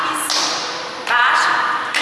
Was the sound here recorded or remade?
recorded